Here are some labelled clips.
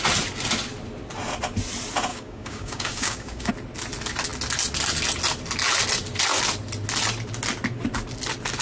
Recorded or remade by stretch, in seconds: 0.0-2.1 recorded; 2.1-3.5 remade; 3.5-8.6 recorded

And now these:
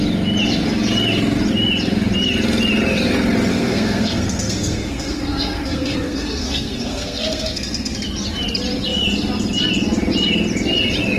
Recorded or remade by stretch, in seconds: 0.0-3.5 recorded; 3.5-8.0 remade; 8.0-11.2 recorded